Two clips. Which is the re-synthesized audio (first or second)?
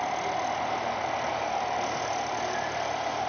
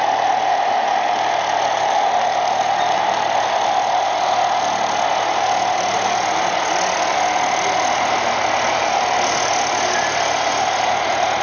first